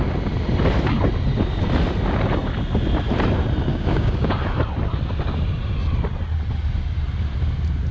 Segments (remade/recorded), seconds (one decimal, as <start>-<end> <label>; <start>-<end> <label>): 0.0-3.7 recorded; 3.7-4.3 remade; 4.3-7.9 recorded